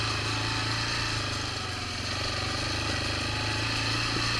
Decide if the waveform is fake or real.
real